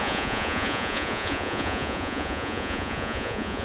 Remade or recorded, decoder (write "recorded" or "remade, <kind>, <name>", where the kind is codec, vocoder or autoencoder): remade, vocoder, Vocos